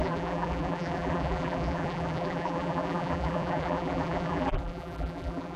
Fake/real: fake